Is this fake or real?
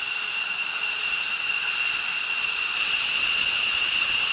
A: real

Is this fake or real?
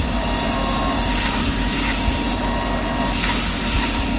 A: real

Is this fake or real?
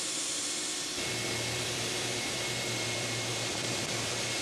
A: fake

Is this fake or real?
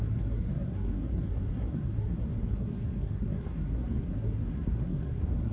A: fake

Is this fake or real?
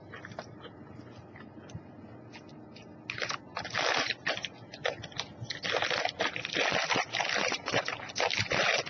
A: real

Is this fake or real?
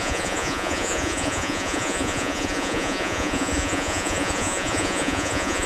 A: fake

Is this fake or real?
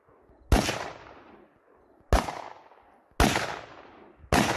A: real